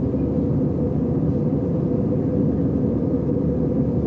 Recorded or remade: recorded